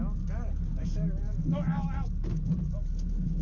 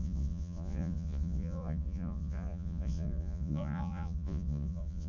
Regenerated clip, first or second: second